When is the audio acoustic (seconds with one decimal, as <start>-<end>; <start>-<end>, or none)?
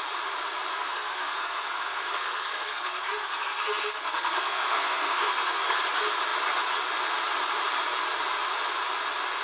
0.0-0.7; 5.8-9.4